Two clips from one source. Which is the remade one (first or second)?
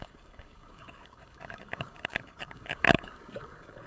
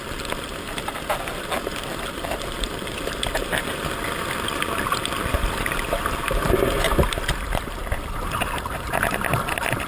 first